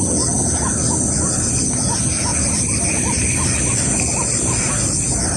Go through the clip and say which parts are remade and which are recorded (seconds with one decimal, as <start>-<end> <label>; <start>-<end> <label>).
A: 0.0-5.4 recorded